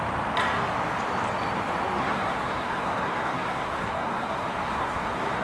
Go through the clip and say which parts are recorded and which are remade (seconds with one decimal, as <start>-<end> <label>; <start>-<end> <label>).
0.0-2.0 recorded; 2.0-5.4 remade